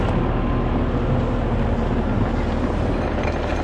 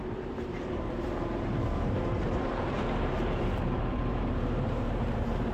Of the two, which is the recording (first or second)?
first